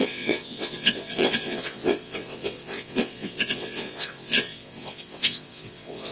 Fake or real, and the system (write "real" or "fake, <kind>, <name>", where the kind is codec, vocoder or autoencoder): fake, vocoder, WaveNeXt